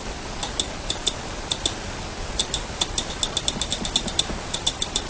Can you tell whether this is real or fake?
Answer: real